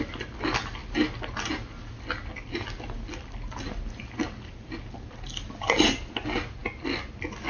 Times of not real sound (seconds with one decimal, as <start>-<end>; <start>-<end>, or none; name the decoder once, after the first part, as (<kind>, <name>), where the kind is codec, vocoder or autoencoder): none